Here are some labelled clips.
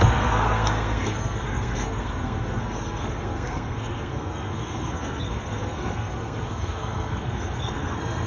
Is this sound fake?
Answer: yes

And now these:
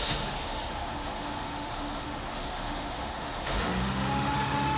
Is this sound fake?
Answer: yes